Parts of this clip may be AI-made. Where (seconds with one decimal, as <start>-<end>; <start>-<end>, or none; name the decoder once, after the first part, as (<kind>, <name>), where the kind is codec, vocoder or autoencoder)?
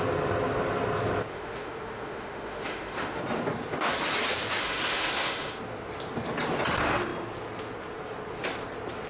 1.3-3.2 (autoencoder, DAC-VAE); 4.6-5.6